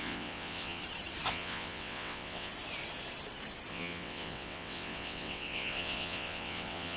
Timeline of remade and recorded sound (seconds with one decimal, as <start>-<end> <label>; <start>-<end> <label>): 0.0-0.8 remade; 0.8-1.3 recorded; 1.3-2.5 remade; 2.5-3.7 recorded; 3.7-7.0 remade